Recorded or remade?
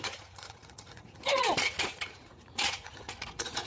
remade